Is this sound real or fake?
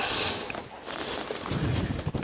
real